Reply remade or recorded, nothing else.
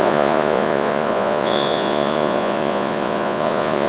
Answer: remade